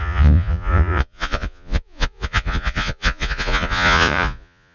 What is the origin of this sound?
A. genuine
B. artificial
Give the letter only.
B